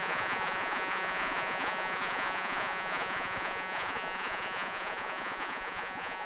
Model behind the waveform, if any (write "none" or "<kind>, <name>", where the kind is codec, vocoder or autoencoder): vocoder, Vocos